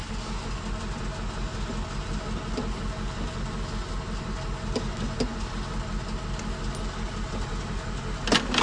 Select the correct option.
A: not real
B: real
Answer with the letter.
B